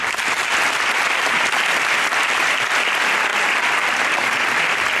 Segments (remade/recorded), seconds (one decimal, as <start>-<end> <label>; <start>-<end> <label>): 0.0-3.3 remade; 3.3-3.9 recorded; 3.9-5.0 remade